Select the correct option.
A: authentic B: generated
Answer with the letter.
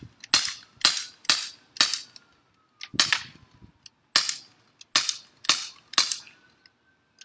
A